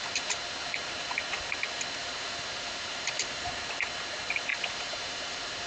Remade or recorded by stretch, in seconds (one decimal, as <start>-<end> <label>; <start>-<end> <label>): 0.0-2.0 recorded; 2.0-3.5 remade; 3.5-4.5 recorded; 4.5-5.7 remade